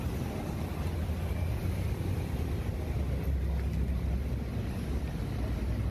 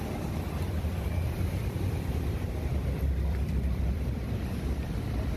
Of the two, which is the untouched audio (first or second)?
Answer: first